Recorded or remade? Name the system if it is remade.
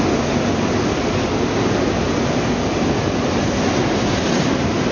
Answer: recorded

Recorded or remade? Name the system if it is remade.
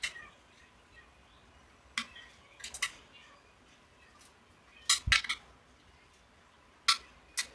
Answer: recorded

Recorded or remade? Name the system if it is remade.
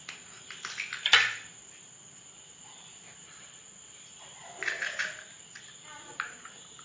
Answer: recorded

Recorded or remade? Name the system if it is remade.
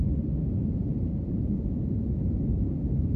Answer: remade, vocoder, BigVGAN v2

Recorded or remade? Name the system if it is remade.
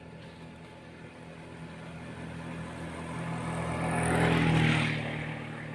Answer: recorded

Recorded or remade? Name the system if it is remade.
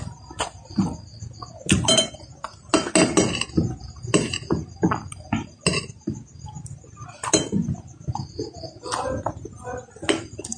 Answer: recorded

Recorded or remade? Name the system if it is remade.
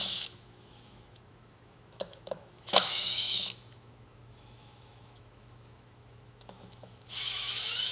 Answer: remade, autoencoder, DAC-VAE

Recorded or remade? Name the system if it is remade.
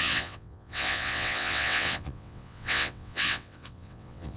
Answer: remade, vocoder, WaveNeXt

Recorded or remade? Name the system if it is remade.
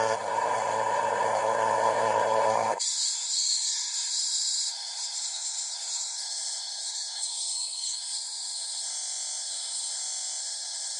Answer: remade, codec, SNAC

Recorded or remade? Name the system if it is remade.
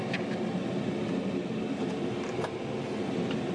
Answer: recorded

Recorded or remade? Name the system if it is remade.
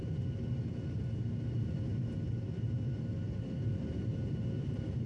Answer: remade, vocoder, BigVGAN v2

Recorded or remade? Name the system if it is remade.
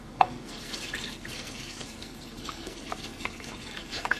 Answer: remade, codec, SNAC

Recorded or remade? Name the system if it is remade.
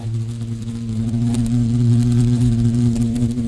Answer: remade, vocoder, BigVGAN v2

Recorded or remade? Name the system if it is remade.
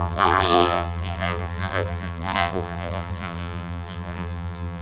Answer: remade, vocoder, BigVGAN v2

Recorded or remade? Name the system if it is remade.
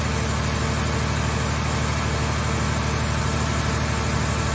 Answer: recorded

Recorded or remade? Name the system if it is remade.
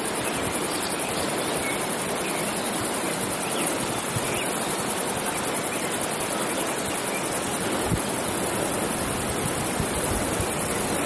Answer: recorded